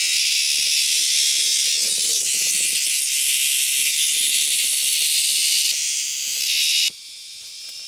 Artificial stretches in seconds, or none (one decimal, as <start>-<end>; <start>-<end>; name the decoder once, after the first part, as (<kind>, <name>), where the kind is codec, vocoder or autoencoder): 5.4-6.4 (vocoder, BigVGAN v2)